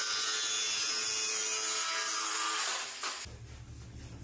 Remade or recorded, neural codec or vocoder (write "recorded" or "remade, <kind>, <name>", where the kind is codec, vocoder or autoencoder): recorded